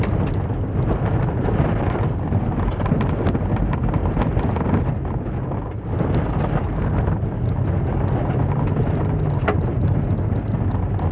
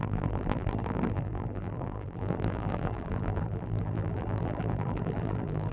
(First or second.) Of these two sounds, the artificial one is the second